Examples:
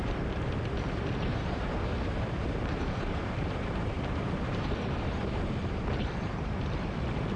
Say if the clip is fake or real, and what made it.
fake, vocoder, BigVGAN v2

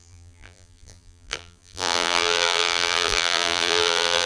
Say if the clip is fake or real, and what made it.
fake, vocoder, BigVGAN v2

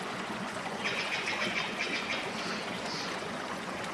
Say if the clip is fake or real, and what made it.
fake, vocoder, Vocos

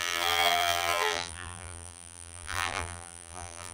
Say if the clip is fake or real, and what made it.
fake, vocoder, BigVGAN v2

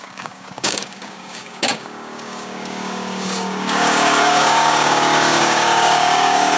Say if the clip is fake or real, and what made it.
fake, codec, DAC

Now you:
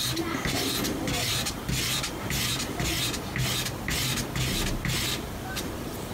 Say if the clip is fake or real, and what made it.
real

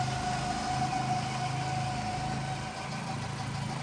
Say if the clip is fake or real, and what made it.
real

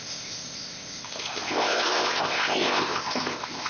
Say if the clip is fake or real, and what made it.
fake, codec, ZipCodec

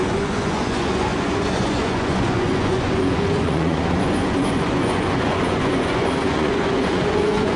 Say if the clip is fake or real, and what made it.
fake, vocoder, Vocos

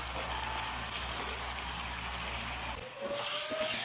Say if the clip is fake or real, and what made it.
real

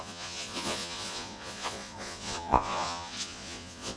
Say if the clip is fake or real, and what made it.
fake, vocoder, Vocos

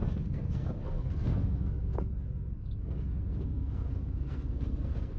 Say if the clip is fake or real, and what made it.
fake, codec, SNAC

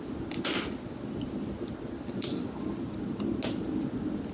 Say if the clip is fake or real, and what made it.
real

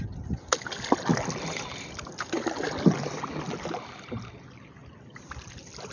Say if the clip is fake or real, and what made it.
real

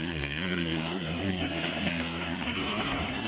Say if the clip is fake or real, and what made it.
fake, codec, SNAC